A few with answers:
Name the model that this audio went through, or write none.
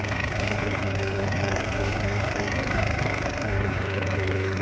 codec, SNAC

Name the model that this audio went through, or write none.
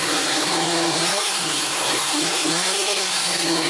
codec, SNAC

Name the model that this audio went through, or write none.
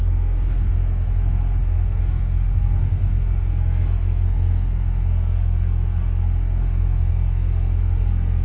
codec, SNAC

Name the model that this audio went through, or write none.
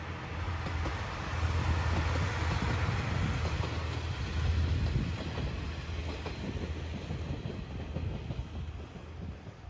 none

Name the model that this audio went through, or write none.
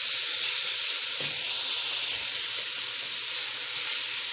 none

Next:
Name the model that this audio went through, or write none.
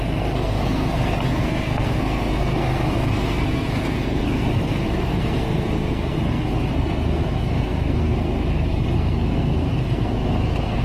codec, SNAC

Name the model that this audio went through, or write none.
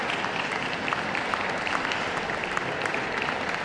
none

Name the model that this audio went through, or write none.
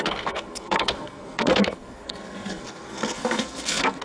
codec, SNAC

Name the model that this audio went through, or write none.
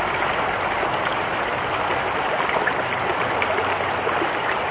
none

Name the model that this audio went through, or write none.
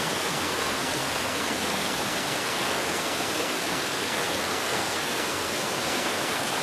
codec, SNAC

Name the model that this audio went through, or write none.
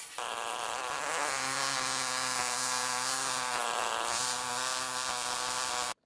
none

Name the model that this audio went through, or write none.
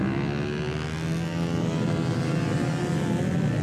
none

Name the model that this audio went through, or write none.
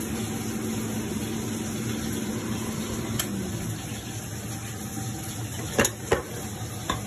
none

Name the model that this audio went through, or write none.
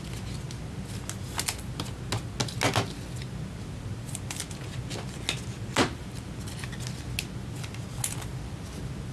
none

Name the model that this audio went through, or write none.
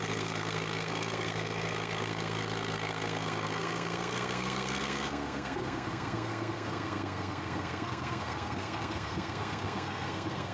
codec, SNAC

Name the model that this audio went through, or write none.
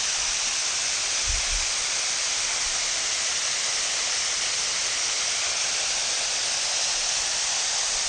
none